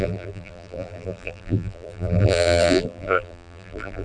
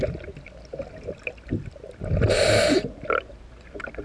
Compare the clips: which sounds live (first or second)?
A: second